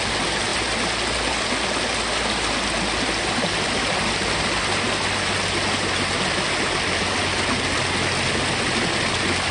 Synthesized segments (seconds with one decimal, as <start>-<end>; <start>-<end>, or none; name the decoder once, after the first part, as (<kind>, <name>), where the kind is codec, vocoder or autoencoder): none